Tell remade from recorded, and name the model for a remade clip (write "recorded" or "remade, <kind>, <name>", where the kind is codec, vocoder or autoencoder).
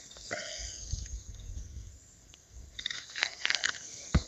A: remade, codec, SNAC